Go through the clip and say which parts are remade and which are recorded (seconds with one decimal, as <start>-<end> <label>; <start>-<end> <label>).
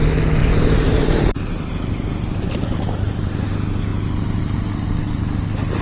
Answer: 0.0-0.4 recorded; 0.4-3.5 remade; 3.5-5.8 recorded